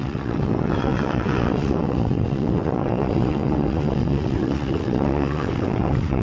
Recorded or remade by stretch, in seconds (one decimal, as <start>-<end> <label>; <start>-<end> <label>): 0.0-6.2 remade